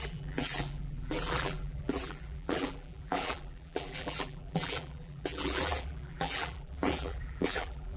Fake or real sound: fake